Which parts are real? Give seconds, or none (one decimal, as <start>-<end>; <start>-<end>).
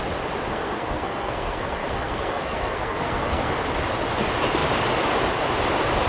0.0-0.5; 3.5-6.1